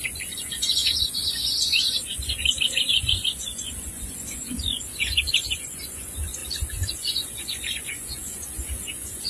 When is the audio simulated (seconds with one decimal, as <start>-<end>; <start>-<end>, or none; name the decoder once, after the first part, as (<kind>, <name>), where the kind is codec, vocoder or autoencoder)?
0.0-6.4 (vocoder, Vocos); 6.9-9.3